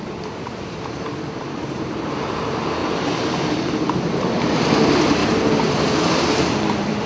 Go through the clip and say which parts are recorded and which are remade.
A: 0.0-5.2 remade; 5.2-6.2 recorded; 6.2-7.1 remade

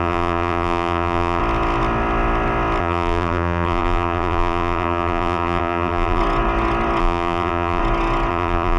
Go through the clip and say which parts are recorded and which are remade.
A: 0.0-1.4 remade; 1.4-2.8 recorded; 2.8-6.2 remade; 6.2-7.0 recorded; 7.0-7.8 remade; 7.8-8.3 recorded; 8.3-8.8 remade

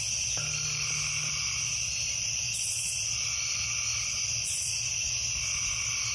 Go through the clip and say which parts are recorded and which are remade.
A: 0.0-6.1 recorded

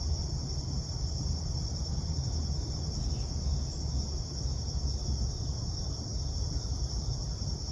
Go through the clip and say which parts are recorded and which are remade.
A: 0.0-7.7 recorded

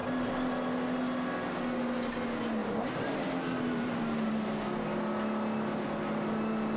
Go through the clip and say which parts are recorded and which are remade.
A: 0.0-2.6 recorded; 2.6-4.3 remade; 4.3-6.8 recorded

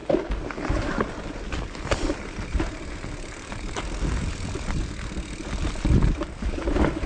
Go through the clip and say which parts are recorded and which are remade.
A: 0.0-7.1 remade

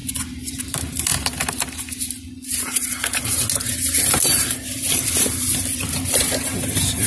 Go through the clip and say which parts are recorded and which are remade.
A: 0.0-0.6 recorded; 0.6-1.1 remade; 1.1-3.7 recorded; 3.7-4.8 remade; 4.8-6.1 recorded; 6.1-7.1 remade

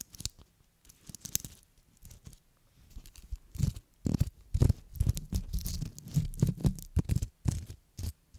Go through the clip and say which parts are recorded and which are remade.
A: 0.0-8.4 recorded